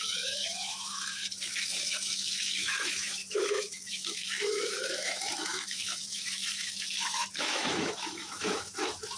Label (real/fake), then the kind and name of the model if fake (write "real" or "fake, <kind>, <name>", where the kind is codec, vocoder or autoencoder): fake, autoencoder, DAC-VAE